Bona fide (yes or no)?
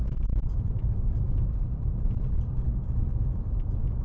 yes